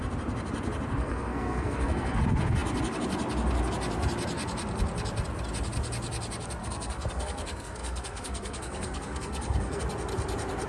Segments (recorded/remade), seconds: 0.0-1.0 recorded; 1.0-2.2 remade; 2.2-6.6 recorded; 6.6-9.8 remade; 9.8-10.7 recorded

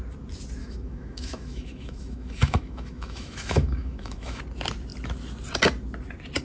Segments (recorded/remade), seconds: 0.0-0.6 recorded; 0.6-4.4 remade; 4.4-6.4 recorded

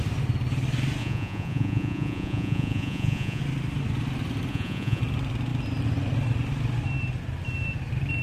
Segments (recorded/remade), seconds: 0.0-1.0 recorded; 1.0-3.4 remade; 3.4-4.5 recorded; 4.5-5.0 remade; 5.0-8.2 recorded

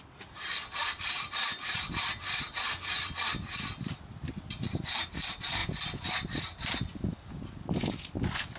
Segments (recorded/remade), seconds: 0.0-5.6 remade; 5.6-8.2 recorded; 8.2-8.6 remade

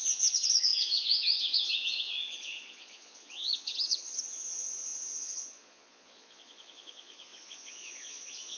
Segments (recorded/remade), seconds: 0.0-8.6 remade